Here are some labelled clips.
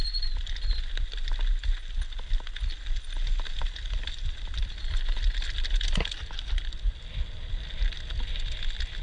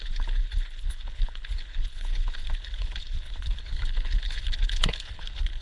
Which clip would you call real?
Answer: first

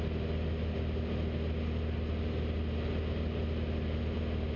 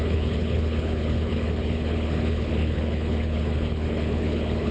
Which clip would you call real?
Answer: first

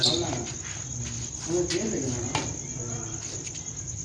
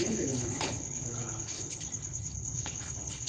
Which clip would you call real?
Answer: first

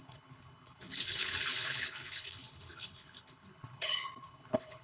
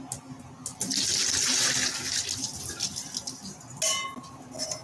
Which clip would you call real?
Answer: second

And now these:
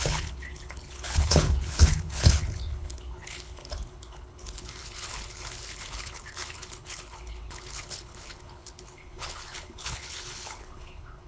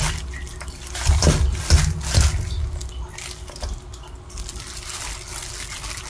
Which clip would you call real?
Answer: second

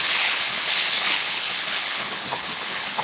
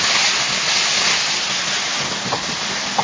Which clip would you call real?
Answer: second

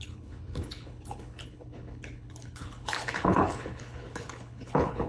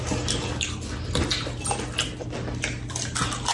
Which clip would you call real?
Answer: second